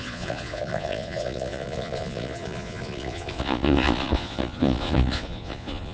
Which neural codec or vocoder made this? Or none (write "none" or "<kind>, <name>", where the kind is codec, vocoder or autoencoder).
vocoder, Vocos